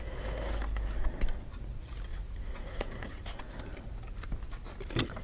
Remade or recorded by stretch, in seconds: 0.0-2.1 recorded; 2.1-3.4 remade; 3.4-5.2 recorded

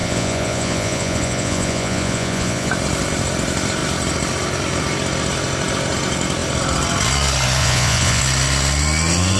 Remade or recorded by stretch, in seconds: 0.0-2.7 remade; 2.7-7.6 recorded; 7.6-8.2 remade; 8.2-9.4 recorded

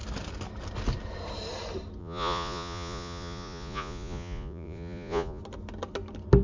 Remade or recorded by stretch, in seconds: 0.0-2.0 recorded; 2.0-5.4 remade; 5.4-6.4 recorded

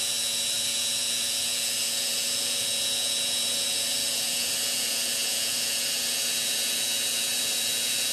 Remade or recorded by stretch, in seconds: 0.0-8.1 remade

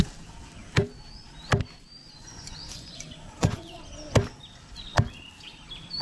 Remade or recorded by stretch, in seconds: 0.0-2.0 recorded; 2.0-3.8 remade; 3.8-6.0 recorded

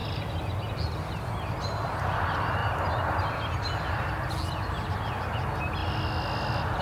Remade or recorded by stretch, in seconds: 0.0-6.8 recorded

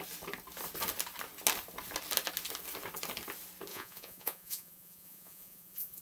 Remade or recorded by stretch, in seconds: 0.0-3.7 recorded; 3.7-6.0 remade